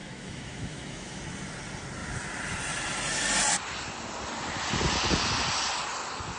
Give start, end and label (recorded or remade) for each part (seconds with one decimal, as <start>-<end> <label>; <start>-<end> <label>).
0.0-1.2 remade; 1.2-6.4 recorded